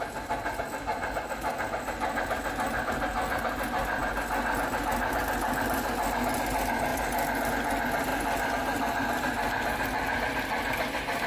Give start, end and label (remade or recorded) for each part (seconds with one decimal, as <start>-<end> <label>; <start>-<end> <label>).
0.0-11.3 recorded